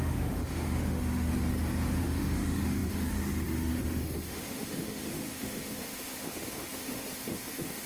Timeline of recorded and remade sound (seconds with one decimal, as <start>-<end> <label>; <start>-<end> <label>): 0.0-1.3 remade; 1.3-2.0 recorded; 2.0-7.9 remade